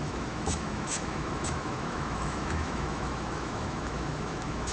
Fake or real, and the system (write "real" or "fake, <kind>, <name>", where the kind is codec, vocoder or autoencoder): fake, autoencoder, DAC-VAE